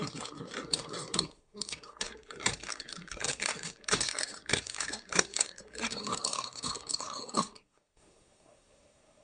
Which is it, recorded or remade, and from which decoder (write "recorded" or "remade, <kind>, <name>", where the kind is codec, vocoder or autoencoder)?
remade, codec, SNAC